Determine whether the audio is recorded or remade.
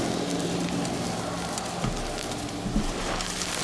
recorded